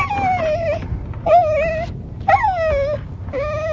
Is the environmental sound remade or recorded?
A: recorded